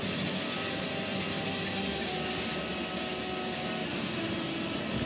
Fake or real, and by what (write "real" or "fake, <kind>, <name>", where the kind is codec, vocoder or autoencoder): real